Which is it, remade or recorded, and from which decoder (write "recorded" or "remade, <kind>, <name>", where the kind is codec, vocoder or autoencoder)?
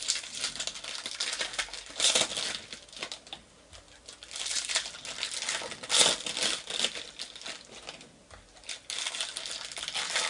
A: recorded